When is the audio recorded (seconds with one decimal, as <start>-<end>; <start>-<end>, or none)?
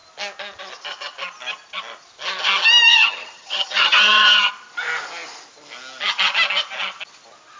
0.0-2.9; 4.5-7.6